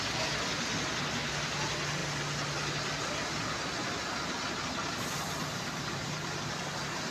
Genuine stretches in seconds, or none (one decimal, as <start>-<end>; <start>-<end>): 0.0-5.4; 6.5-7.1